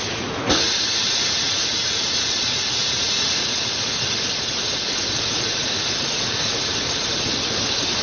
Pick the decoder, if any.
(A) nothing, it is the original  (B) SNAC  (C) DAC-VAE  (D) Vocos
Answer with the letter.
D